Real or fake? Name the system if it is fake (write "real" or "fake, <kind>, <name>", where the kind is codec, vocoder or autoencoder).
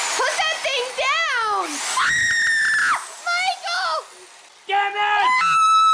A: real